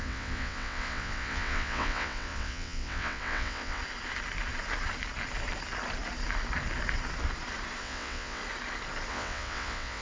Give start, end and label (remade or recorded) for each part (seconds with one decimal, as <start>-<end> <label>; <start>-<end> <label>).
0.0-3.8 remade; 3.8-7.8 recorded; 7.8-8.4 remade; 8.4-9.1 recorded; 9.1-10.0 remade